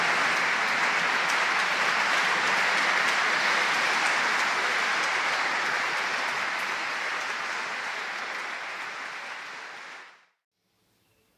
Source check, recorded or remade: recorded